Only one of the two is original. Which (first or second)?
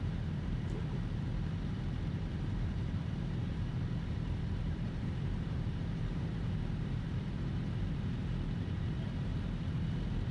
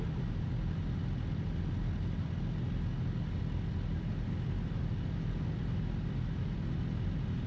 second